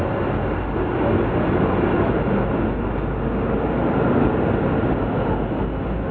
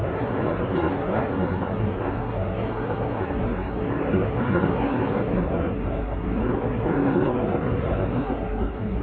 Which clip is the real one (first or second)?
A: first